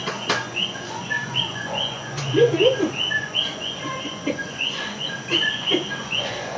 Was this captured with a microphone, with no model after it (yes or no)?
no